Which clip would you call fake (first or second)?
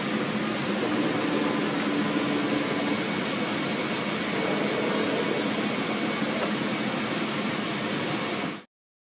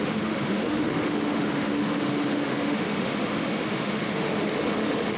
second